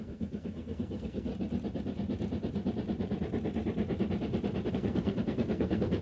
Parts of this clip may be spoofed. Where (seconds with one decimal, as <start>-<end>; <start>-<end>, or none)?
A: 0.0-1.3; 4.7-6.0